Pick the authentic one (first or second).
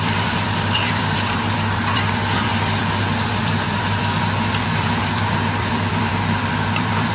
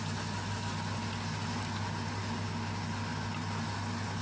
second